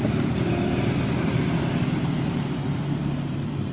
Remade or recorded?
recorded